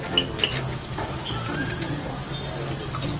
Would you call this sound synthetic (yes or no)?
no